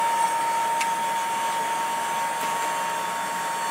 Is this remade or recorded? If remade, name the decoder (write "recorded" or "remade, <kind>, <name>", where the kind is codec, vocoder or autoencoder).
recorded